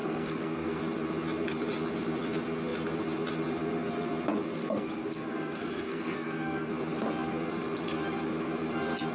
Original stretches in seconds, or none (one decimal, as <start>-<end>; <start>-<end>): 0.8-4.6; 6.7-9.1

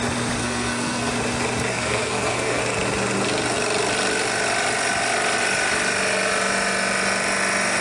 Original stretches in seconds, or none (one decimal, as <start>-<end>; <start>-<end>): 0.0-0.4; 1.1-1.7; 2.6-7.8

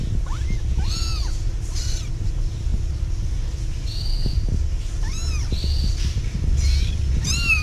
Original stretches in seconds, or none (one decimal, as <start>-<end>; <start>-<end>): 0.0-7.6

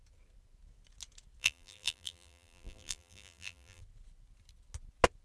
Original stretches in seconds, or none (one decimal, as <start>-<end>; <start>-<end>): 0.0-1.4; 3.8-5.2

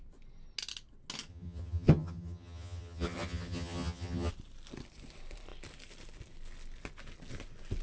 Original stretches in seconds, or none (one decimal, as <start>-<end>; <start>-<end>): 0.0-1.3; 4.3-7.8